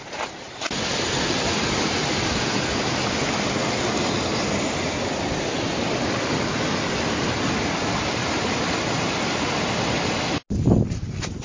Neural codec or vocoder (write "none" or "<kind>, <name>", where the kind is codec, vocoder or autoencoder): none